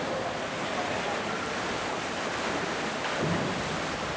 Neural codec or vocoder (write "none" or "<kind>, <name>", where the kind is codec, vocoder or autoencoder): vocoder, BigVGAN v2